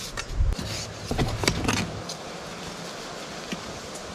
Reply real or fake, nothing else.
real